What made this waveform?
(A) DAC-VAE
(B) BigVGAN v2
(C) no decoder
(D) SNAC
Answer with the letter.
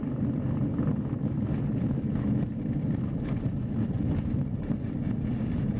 C